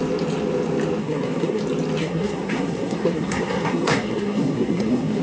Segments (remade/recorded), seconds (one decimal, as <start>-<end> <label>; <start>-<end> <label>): 0.0-1.0 recorded; 1.0-1.6 remade; 1.6-2.0 recorded; 2.0-5.2 remade